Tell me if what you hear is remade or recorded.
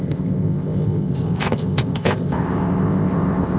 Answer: remade